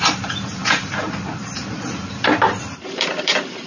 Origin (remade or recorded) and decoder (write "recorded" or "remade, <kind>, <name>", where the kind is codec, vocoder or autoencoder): remade, vocoder, BigVGAN v2